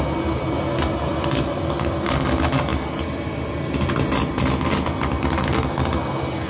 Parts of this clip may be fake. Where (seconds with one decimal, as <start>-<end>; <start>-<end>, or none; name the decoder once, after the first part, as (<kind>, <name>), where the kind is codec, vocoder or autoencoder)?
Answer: none